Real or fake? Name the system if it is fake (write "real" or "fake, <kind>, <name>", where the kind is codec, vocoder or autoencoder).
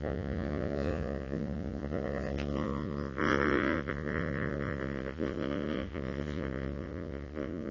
fake, vocoder, Vocos